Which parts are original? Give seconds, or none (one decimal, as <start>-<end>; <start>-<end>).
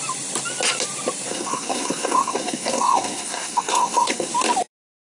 0.0-1.3; 4.3-5.0